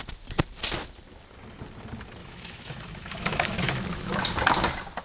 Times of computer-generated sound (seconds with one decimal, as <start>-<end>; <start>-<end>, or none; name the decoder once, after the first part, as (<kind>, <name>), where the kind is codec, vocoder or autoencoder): 2.2-4.2 (autoencoder, DAC-VAE)